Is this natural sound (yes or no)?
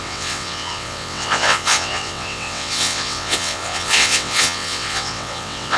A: no